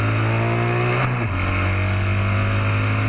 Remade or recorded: recorded